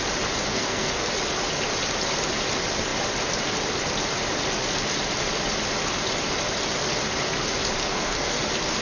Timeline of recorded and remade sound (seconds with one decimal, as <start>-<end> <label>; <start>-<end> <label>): 0.0-0.5 recorded; 0.5-1.1 remade; 1.1-7.8 recorded; 7.8-8.4 remade; 8.4-8.8 recorded